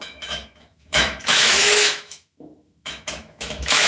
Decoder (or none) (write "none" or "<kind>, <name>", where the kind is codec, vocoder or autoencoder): autoencoder, DAC-VAE